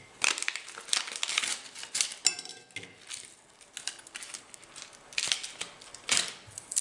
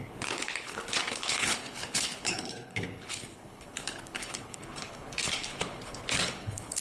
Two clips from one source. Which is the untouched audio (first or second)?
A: first